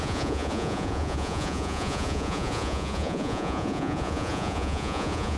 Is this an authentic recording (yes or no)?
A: no